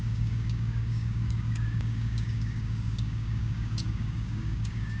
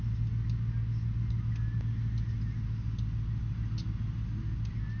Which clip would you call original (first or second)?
second